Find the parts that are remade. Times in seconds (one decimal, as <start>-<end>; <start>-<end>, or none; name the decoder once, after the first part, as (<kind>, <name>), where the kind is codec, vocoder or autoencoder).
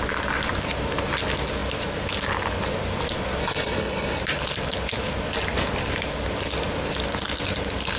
3.4-4.2 (codec, HILCodec)